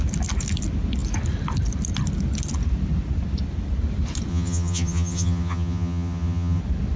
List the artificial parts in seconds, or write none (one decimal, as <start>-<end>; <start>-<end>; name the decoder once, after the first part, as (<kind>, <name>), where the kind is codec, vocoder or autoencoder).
4.3-6.6 (vocoder, HiFi-GAN)